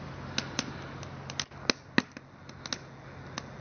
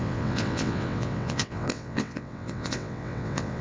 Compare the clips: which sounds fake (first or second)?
second